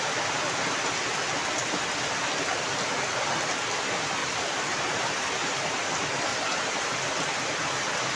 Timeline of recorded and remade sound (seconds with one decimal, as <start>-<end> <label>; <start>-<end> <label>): 0.0-4.2 recorded; 4.2-5.7 remade; 5.7-6.3 recorded; 6.3-7.3 remade; 7.3-8.2 recorded